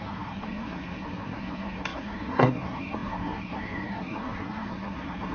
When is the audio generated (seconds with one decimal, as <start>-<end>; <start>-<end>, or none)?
0.0-5.3